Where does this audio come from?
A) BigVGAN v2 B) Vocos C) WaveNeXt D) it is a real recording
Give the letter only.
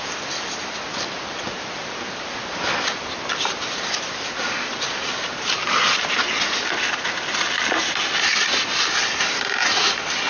D